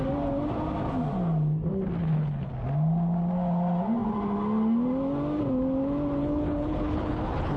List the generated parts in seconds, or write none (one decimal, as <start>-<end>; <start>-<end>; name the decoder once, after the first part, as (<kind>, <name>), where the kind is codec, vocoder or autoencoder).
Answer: 2.0-2.5 (codec, HILCodec); 6.2-7.6

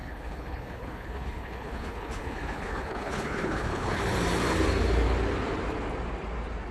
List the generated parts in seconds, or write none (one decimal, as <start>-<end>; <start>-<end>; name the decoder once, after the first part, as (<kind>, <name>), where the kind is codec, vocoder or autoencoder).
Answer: 0.0-4.0 (codec, HILCodec)